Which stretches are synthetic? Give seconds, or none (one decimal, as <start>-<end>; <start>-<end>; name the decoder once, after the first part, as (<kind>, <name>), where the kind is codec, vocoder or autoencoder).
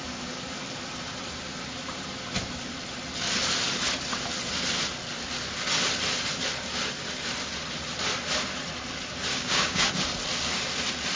9.3-9.9 (codec, DAC)